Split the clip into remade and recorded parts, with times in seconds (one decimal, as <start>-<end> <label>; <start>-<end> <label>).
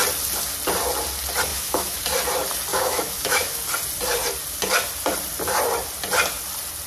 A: 0.0-1.5 recorded; 1.5-2.0 remade; 2.0-2.7 recorded; 2.7-3.6 remade; 3.6-6.9 recorded